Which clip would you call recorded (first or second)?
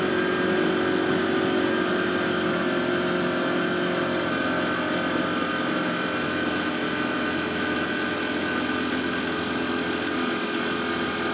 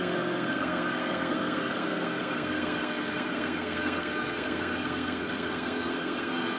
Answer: first